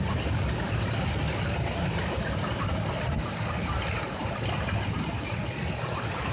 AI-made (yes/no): no